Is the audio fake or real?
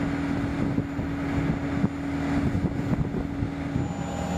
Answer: real